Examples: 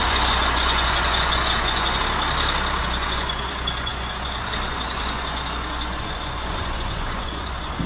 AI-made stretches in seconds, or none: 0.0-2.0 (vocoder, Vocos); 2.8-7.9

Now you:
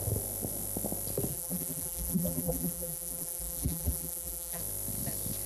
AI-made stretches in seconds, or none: 1.3-4.6 (vocoder, BigVGAN v2)